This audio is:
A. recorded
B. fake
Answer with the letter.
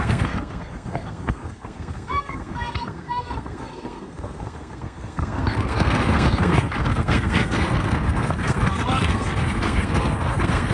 B